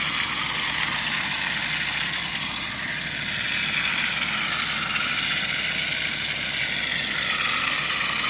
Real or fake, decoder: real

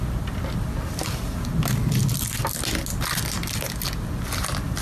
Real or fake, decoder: real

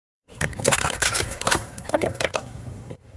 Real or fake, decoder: fake, codec, SNAC